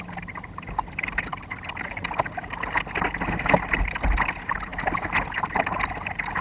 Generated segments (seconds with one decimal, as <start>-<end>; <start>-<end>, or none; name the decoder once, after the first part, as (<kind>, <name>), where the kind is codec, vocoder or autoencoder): none